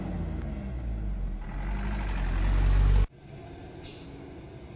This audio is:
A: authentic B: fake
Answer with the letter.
A